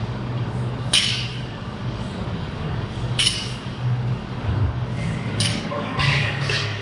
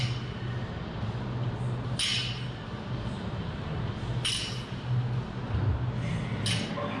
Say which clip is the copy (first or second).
first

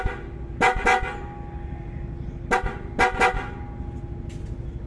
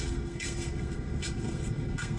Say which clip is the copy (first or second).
second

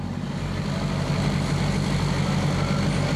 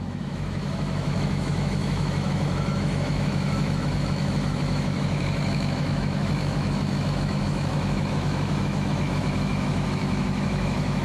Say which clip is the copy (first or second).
second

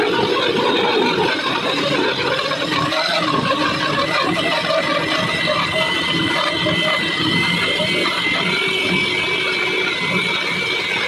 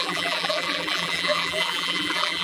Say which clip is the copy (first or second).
second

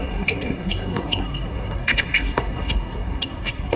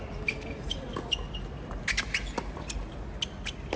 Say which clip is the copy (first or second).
first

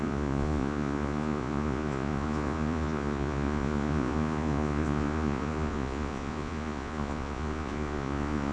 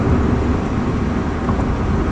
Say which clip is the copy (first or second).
first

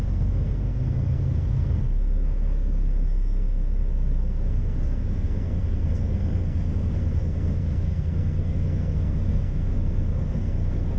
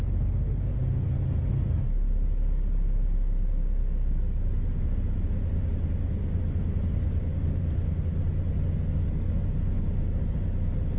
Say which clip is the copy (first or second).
first